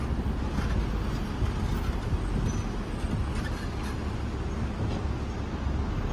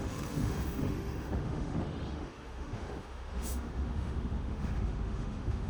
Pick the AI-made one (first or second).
second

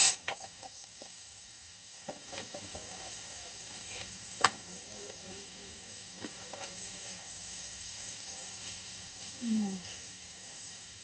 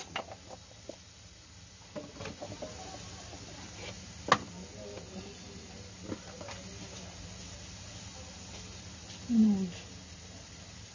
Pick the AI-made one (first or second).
first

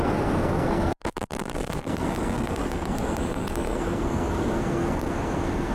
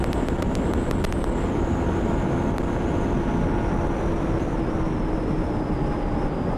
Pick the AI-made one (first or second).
first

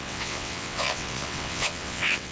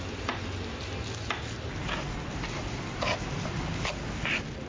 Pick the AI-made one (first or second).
first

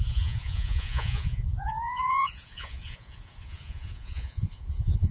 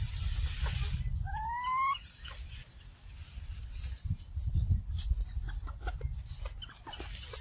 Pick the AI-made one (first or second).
first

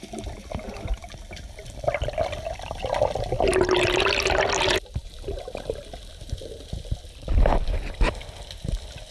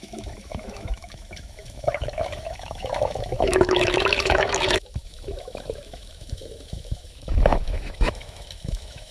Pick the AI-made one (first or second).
second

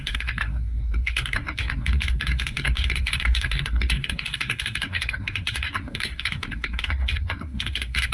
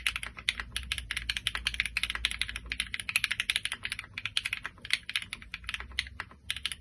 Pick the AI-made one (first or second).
first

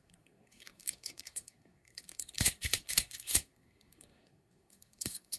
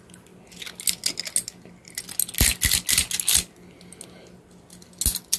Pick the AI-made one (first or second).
first